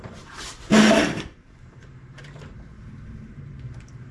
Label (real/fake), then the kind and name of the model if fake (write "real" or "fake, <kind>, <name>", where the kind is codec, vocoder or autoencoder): fake, vocoder, BigVGAN v2